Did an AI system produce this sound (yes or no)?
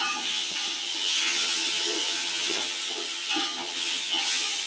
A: yes